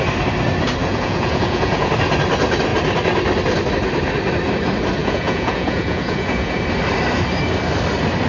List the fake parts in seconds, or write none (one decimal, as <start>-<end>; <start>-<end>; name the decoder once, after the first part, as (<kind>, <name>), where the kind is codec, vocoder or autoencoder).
0.8-1.9 (vocoder, Vocos); 5.0-6.6